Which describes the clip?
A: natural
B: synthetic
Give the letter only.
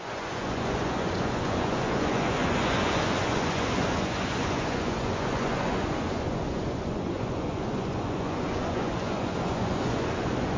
B